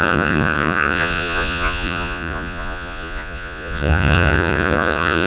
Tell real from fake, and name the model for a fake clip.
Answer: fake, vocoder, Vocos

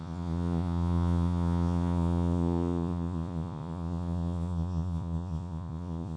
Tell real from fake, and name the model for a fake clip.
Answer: fake, vocoder, Vocos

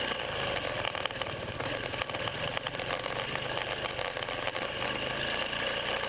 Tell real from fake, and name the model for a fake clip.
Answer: real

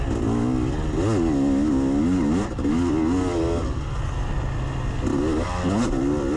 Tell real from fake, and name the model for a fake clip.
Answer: real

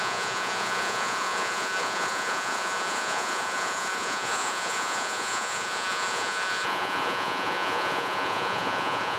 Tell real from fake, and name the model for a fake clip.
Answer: fake, vocoder, Vocos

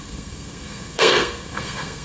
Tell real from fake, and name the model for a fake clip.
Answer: fake, codec, SNAC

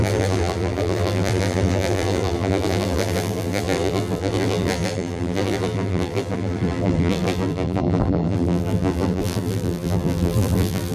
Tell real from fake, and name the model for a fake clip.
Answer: fake, vocoder, BigVGAN v2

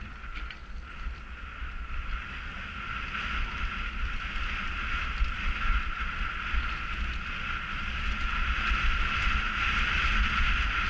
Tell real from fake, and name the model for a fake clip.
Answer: real